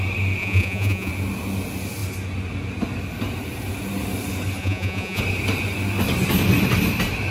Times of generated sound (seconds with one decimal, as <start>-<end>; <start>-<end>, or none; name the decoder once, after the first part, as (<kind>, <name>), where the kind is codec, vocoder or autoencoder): 0.4-1.1 (vocoder, Vocos); 4.6-5.2